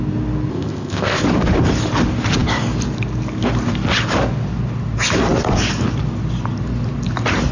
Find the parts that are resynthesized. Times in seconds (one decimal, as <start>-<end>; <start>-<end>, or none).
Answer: 0.5-1.2